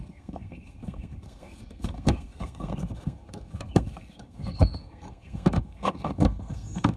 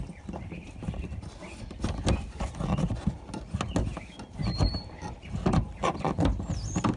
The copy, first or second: first